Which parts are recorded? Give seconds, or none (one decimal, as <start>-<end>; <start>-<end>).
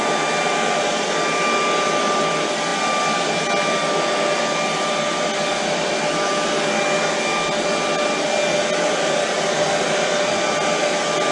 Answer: 0.0-11.3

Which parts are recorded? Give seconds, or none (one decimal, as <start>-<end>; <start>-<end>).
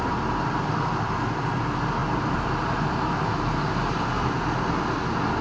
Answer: 0.0-2.0; 3.7-5.4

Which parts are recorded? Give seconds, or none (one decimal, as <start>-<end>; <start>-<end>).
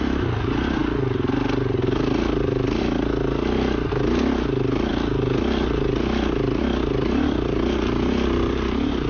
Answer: 0.0-9.1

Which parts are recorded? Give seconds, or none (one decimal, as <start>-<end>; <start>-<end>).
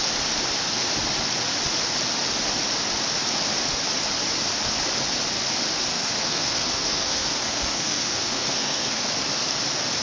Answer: 0.0-5.9; 9.1-10.0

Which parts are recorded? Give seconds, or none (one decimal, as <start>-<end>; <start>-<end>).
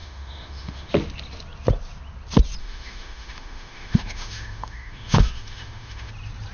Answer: 0.9-2.6; 6.1-6.5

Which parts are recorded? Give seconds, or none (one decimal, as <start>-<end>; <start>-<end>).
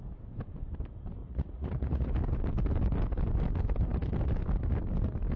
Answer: 0.0-1.2; 2.1-5.4